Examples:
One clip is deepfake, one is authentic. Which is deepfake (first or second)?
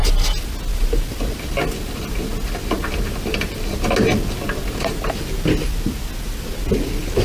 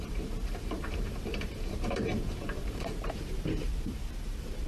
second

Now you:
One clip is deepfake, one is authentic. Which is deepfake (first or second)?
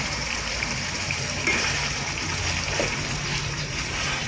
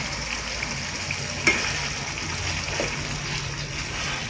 first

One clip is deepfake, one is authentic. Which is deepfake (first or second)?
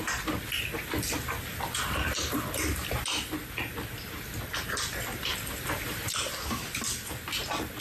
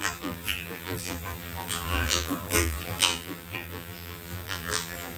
second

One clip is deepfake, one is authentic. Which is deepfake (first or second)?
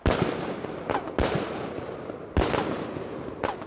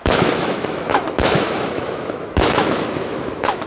second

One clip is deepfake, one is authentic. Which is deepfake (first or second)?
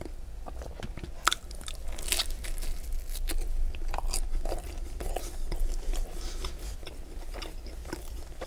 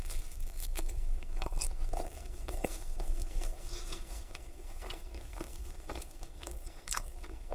second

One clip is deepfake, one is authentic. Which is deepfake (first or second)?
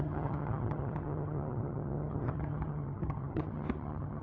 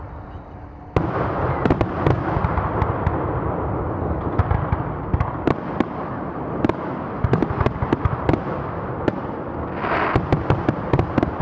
first